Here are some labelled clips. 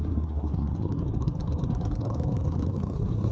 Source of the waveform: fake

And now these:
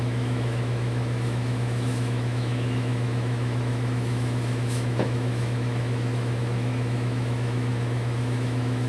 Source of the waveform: fake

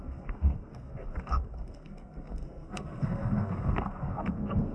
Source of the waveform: fake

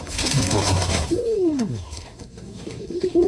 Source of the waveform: fake